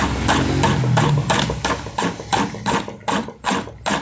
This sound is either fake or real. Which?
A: real